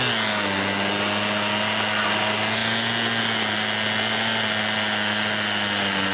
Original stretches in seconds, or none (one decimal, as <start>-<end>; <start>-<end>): 0.0-6.1